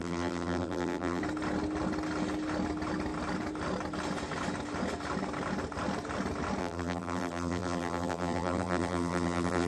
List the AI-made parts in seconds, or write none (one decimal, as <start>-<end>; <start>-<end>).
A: 0.0-1.2; 6.6-9.7